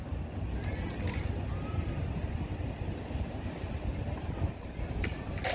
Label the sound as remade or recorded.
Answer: recorded